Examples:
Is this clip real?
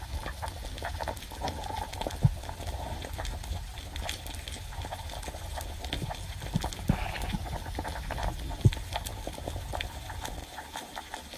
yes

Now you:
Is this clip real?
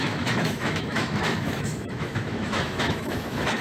no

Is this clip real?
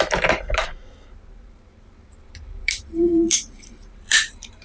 no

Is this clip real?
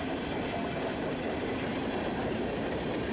no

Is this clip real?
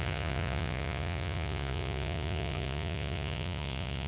no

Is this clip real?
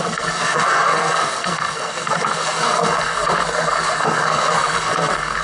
no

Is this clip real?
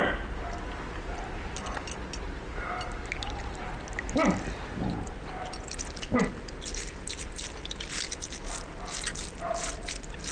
yes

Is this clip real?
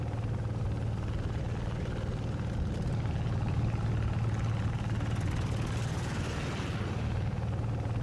yes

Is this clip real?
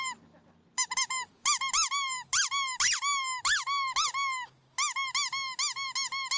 yes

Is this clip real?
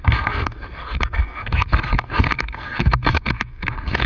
no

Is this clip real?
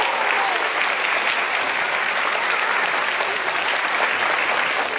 yes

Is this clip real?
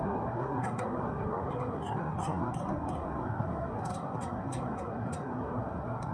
no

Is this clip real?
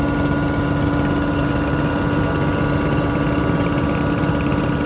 yes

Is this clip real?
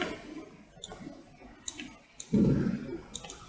yes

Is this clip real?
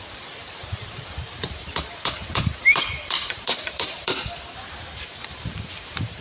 no